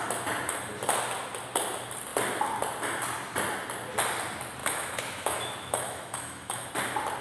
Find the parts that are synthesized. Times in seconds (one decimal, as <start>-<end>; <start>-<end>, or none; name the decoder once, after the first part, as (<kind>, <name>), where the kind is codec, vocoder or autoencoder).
4.6-6.7 (autoencoder, DAC-VAE)